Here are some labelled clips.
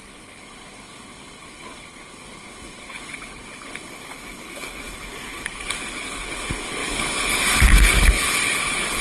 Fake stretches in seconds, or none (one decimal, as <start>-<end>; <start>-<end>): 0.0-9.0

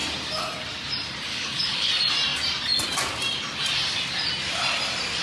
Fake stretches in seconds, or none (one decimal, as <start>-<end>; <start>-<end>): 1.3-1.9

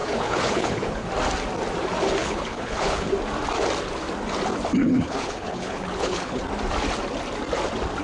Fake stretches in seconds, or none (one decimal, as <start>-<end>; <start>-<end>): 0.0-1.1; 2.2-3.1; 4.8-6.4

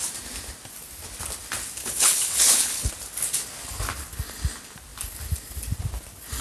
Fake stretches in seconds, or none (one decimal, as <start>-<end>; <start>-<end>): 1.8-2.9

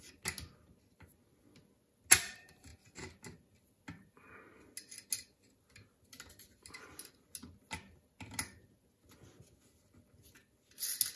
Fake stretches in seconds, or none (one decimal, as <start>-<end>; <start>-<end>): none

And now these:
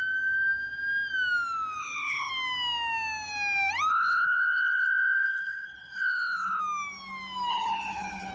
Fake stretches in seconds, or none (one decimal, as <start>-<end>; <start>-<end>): 1.8-2.3; 3.9-6.6; 7.5-8.3